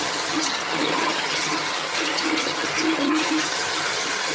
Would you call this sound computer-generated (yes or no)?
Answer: yes